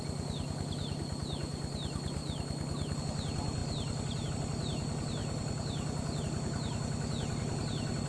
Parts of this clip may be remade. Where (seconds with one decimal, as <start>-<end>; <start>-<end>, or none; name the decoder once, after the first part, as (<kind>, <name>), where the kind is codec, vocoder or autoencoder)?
none